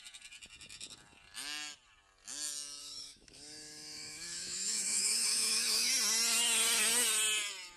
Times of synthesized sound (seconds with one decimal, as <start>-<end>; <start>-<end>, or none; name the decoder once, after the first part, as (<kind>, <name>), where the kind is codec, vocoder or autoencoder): 2.8-5.9 (autoencoder, DAC-VAE)